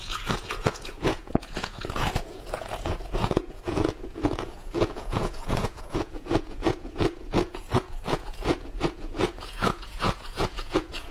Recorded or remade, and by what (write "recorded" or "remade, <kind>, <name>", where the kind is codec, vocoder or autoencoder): remade, vocoder, Vocos